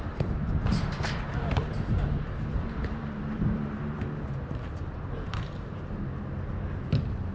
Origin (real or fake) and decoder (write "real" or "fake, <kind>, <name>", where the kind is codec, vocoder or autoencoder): fake, vocoder, BigVGAN v2